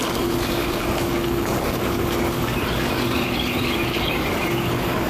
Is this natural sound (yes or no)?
no